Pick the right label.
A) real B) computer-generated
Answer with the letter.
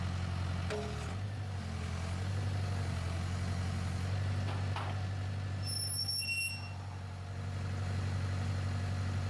A